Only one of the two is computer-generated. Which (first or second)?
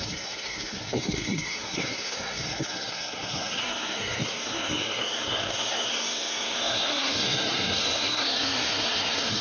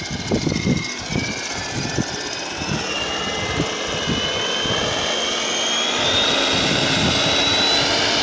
first